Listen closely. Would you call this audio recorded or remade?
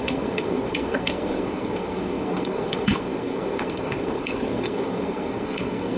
remade